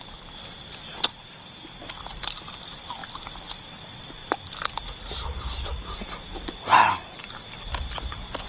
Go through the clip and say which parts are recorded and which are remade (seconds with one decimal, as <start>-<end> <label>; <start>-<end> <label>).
0.0-3.0 recorded; 3.0-3.5 remade; 3.5-8.5 recorded